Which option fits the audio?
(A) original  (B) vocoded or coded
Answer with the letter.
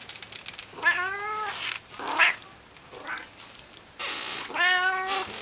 A